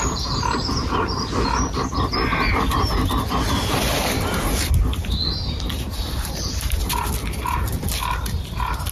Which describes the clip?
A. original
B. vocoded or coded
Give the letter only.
A